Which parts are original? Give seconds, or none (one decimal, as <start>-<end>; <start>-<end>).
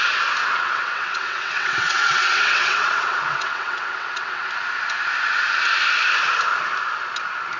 0.0-0.4; 4.5-7.6